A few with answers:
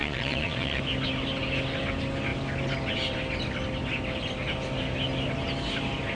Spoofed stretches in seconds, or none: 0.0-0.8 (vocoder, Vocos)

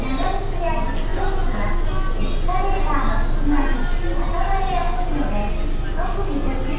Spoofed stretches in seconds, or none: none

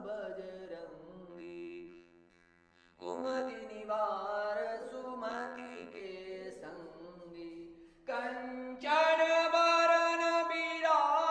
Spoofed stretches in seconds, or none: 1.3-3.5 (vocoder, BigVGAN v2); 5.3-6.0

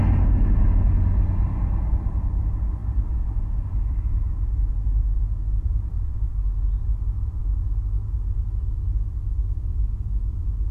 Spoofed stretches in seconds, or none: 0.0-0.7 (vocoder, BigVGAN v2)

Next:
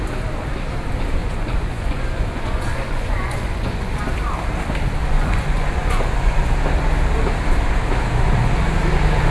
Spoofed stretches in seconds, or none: 1.2-4.0 (vocoder, Vocos); 5.0-6.4